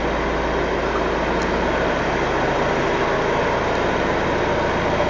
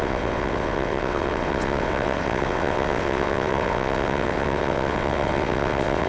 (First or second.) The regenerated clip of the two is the second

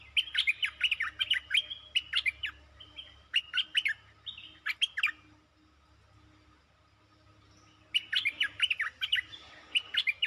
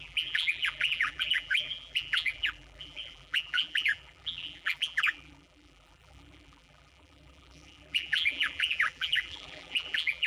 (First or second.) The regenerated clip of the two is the second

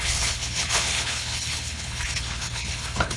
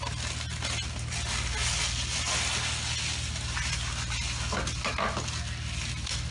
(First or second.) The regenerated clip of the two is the first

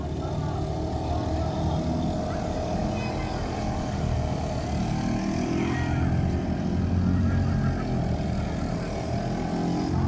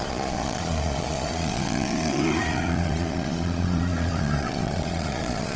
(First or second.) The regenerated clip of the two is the second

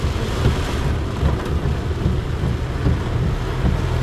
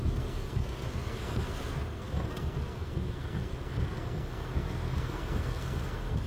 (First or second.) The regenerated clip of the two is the second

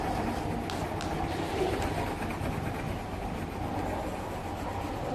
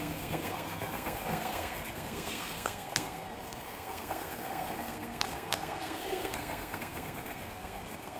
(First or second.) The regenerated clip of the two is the second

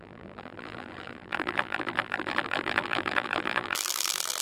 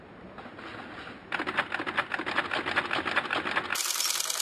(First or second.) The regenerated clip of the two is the first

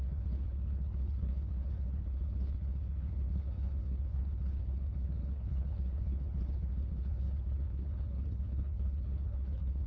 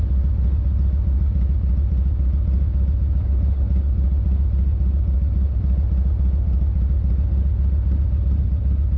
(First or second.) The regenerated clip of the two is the first